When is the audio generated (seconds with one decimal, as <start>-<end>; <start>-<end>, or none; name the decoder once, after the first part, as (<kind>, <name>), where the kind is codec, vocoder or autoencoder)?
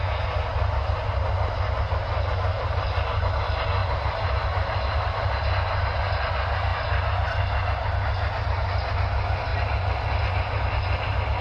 2.5-3.3 (vocoder, BigVGAN v2); 3.8-5.0